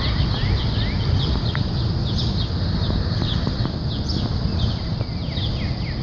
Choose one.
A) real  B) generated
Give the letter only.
A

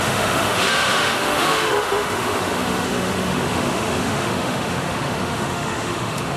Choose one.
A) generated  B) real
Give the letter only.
A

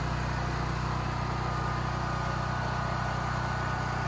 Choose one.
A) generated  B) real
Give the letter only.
B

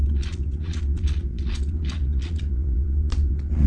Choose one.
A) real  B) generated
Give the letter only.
B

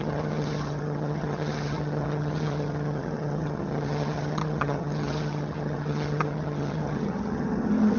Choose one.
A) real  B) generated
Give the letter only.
B